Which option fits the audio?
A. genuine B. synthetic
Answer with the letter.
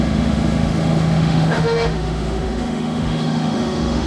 B